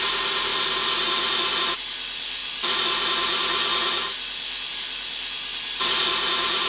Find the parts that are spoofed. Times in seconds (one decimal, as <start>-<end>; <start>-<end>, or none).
none

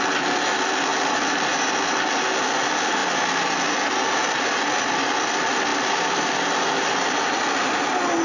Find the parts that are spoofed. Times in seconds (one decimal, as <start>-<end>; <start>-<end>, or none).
0.9-1.5; 5.7-7.2